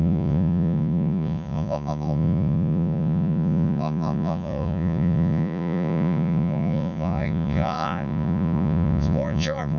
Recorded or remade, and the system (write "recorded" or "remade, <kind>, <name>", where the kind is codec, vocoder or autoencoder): remade, vocoder, Vocos